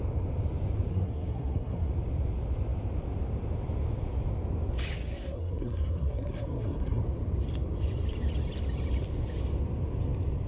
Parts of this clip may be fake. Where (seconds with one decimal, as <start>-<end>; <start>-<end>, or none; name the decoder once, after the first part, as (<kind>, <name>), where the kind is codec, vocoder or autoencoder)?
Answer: 0.9-1.9 (codec, SNAC); 5.1-7.0